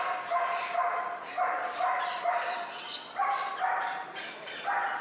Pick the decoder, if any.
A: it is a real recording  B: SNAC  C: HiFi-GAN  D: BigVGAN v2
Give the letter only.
A